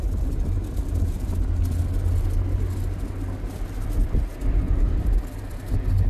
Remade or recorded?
recorded